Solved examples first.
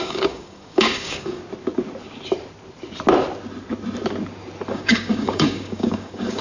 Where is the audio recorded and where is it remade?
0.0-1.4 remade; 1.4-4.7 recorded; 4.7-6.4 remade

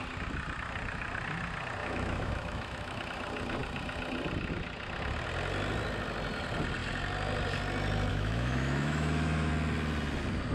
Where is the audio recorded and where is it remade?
0.0-1.8 recorded; 1.8-3.0 remade; 3.0-8.1 recorded; 8.1-9.5 remade; 9.5-10.5 recorded

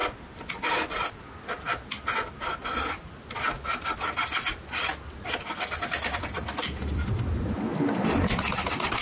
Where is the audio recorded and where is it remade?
0.0-9.0 recorded